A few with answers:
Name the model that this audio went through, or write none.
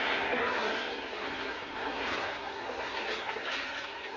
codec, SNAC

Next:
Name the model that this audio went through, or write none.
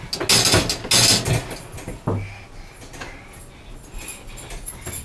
none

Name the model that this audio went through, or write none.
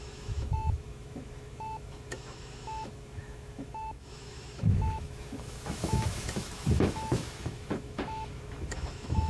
autoencoder, DAC-VAE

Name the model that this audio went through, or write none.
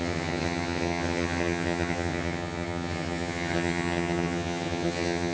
vocoder, HiFi-GAN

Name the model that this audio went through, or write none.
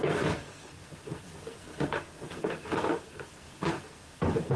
codec, SNAC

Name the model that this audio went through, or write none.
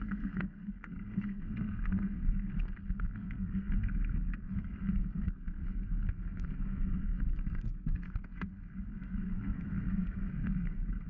codec, SNAC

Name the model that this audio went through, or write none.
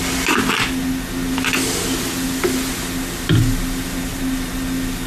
none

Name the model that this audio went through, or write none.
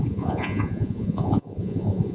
vocoder, Vocos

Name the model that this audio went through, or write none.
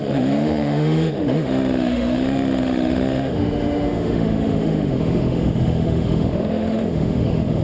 autoencoder, DAC-VAE